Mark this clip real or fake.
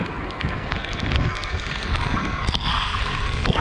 fake